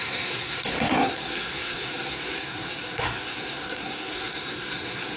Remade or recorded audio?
remade